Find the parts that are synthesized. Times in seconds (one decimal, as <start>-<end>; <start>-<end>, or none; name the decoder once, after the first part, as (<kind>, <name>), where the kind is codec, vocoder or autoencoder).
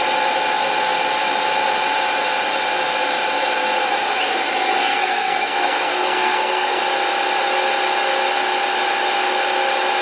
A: 4.8-6.8 (codec, SNAC)